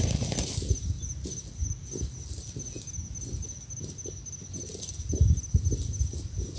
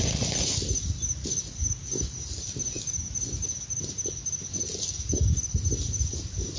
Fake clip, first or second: second